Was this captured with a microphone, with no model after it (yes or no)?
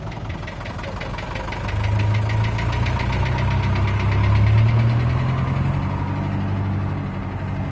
yes